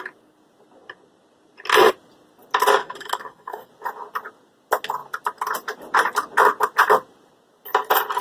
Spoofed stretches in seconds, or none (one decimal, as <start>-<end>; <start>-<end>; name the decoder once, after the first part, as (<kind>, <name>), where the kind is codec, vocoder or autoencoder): 2.8-3.7 (codec, SNAC)